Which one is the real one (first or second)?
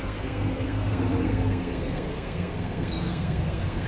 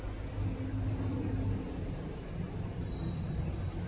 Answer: second